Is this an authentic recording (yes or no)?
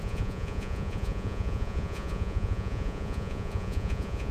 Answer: no